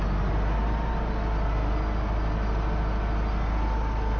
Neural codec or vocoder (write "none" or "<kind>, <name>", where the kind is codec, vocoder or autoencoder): none